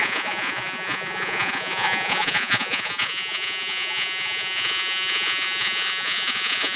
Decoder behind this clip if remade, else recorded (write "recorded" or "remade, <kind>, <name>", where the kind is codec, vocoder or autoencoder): remade, vocoder, Vocos